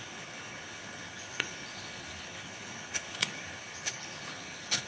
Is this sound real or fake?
fake